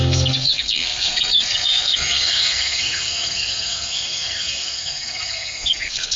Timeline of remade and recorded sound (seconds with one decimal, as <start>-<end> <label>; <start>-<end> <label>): 0.0-6.2 remade